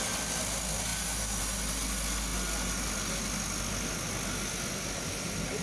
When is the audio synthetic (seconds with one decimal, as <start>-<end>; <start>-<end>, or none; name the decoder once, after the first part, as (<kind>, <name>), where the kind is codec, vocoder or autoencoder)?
none